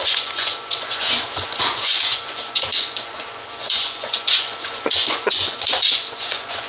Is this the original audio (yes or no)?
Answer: no